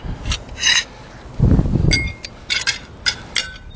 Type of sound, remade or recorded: recorded